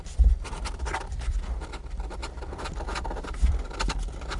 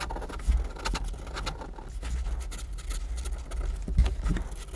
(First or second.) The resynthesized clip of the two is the first